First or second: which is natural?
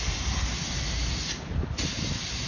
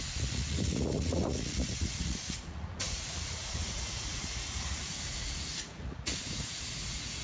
first